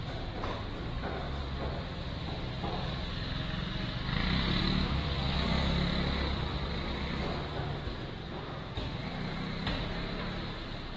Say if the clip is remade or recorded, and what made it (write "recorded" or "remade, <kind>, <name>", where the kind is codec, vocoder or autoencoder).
recorded